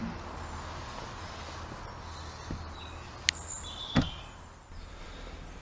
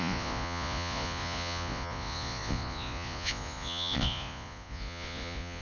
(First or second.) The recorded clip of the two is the first